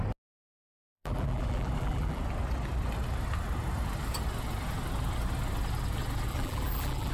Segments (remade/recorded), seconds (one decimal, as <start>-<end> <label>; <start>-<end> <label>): 0.0-0.7 recorded; 0.7-2.2 remade; 2.2-6.3 recorded; 6.3-7.1 remade